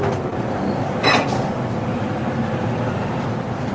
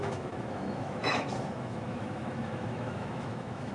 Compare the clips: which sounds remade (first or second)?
second